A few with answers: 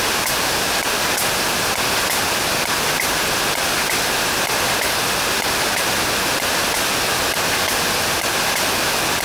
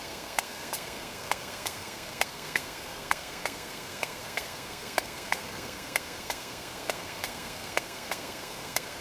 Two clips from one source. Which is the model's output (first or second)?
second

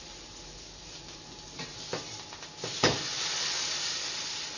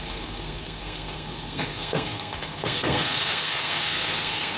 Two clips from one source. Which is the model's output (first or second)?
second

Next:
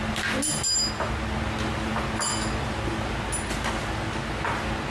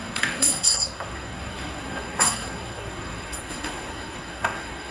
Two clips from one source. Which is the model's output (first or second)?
second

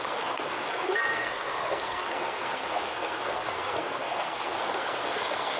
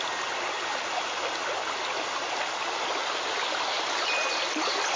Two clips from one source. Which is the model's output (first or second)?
first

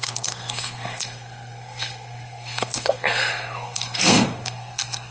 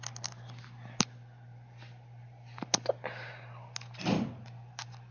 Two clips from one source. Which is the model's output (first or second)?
first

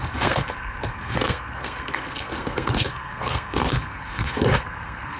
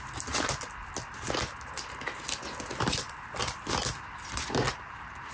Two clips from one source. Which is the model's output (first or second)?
first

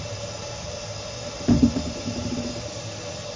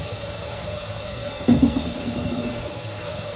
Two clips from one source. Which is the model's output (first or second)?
second